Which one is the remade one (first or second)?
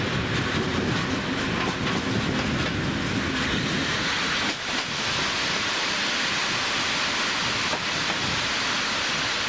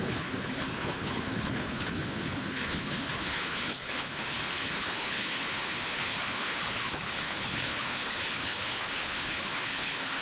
second